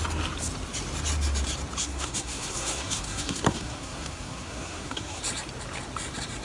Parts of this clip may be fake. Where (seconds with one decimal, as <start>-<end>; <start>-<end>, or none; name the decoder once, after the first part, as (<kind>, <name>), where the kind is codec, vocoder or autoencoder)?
1.8-5.2 (codec, SNAC)